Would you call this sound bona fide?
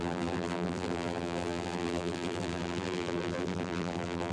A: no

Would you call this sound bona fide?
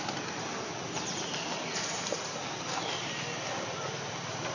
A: yes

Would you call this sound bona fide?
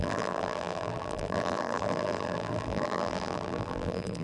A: no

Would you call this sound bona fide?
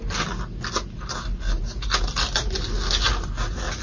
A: yes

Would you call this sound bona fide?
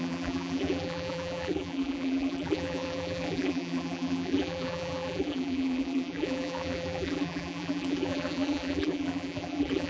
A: no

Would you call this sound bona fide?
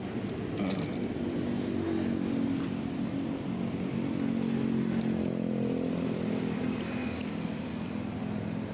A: yes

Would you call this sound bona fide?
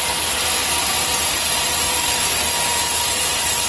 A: yes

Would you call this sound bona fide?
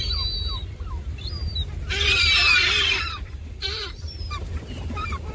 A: no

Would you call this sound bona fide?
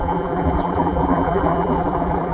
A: no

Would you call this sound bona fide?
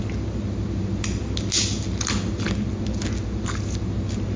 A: yes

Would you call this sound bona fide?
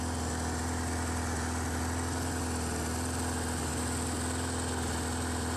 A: yes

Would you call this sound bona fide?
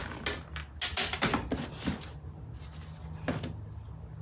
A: yes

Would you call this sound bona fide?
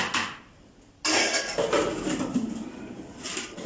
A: yes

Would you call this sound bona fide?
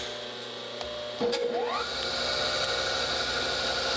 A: yes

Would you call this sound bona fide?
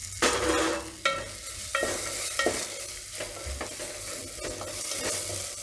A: yes